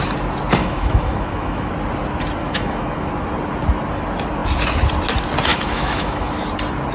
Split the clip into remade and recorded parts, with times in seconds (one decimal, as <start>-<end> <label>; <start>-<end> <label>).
0.0-0.6 recorded; 0.6-1.7 remade; 1.7-2.4 recorded; 2.4-3.1 remade; 3.1-5.5 recorded; 5.5-6.3 remade; 6.3-6.9 recorded